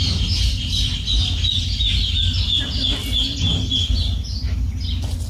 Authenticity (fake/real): real